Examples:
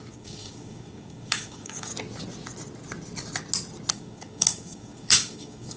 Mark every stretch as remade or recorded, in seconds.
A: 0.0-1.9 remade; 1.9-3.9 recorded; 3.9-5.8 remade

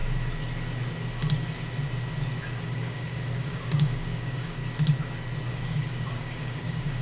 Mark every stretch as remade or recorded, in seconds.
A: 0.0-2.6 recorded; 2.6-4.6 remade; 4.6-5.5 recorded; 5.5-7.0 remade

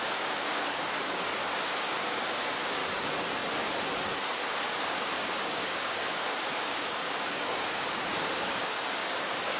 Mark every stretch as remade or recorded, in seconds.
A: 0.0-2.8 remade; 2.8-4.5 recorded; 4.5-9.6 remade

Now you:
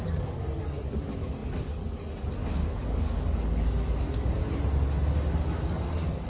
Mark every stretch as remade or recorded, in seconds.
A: 0.0-4.4 remade; 4.4-5.3 recorded; 5.3-6.3 remade

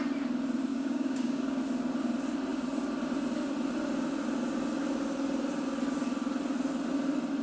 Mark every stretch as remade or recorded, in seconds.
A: 0.0-0.7 recorded; 0.7-1.6 remade; 1.6-7.4 recorded

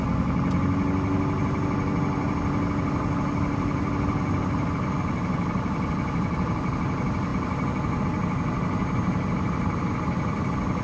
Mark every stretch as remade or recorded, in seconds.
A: 0.0-10.8 recorded

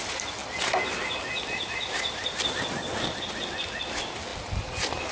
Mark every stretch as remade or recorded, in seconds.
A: 0.0-5.1 recorded